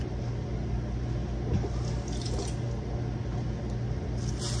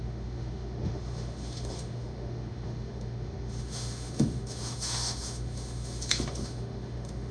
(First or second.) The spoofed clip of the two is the second